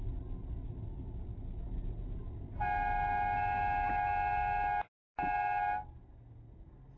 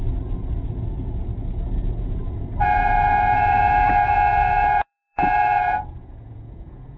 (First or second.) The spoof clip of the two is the second